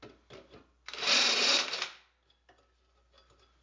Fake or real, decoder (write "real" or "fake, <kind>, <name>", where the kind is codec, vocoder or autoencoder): real